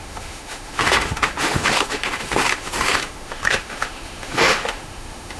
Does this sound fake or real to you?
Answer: fake